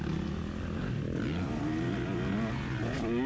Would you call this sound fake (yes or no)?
no